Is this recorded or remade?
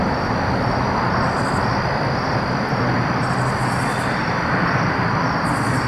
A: recorded